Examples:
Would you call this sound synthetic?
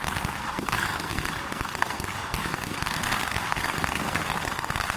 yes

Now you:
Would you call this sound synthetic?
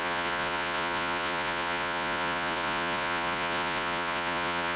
yes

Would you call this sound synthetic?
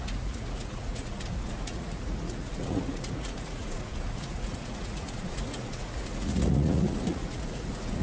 yes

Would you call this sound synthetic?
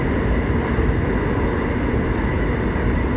no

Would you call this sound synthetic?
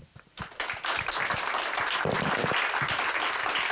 no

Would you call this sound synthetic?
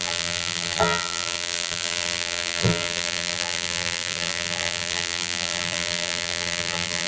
yes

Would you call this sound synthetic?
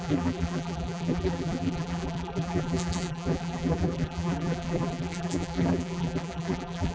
yes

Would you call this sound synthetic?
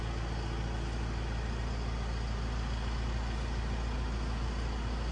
no